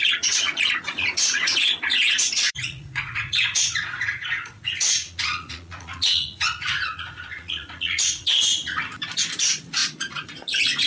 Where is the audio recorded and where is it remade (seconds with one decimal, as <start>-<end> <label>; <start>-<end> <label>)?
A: 0.0-8.5 remade; 8.5-9.4 recorded; 9.4-10.9 remade